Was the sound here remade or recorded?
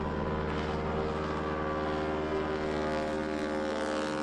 recorded